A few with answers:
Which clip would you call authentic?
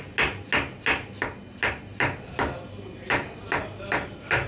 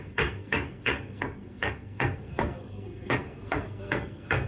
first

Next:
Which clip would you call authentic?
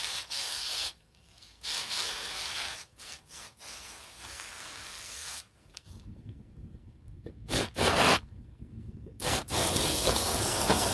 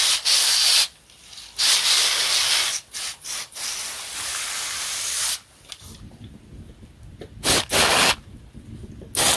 second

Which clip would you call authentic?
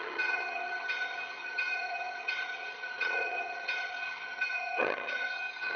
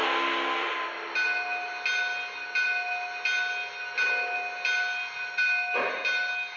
second